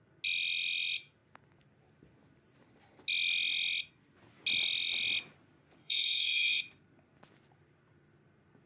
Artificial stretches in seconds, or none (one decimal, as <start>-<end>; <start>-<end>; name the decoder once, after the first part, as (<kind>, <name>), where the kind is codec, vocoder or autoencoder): 5.8-6.6 (autoencoder, DAC-VAE)